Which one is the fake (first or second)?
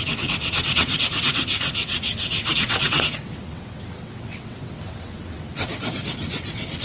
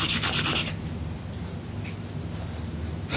first